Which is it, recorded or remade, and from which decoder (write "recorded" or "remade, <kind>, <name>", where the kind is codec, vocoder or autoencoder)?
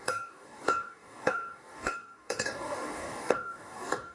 remade, codec, DAC